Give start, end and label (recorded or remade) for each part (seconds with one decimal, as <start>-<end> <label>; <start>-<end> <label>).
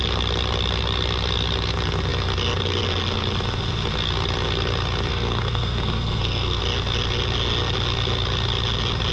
0.0-5.1 recorded; 5.1-6.6 remade; 6.6-9.1 recorded